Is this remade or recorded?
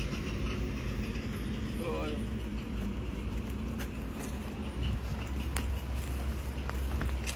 recorded